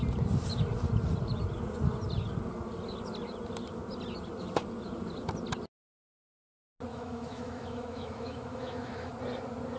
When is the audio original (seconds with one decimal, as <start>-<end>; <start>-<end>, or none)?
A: 0.0-6.9; 9.1-9.8